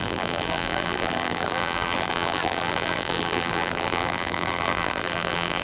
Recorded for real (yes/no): no